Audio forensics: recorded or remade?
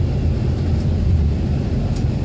recorded